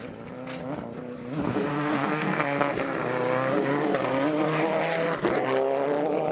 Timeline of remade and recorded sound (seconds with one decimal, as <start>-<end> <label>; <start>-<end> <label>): 0.0-1.7 recorded; 1.7-2.7 remade; 2.7-6.3 recorded